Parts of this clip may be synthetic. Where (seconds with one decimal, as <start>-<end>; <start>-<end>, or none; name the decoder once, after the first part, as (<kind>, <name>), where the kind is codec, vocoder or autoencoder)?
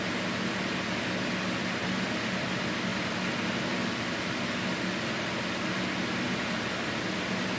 none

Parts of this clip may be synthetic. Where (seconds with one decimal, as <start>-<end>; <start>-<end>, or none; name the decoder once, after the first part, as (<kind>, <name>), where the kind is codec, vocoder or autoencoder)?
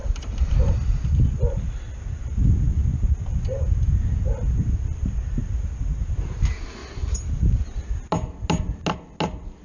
0.0-0.6 (vocoder, BigVGAN v2); 6.8-7.9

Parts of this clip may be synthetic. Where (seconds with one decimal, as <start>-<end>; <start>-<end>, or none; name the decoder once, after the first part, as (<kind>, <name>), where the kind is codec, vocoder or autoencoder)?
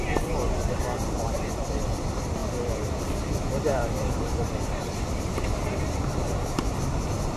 0.0-7.4 (vocoder, BigVGAN v2)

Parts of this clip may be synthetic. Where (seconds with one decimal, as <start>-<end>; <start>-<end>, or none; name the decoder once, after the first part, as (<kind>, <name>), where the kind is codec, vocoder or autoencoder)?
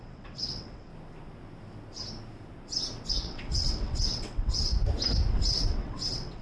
0.0-0.9 (vocoder, WaveNeXt); 3.1-4.7; 5.3-6.4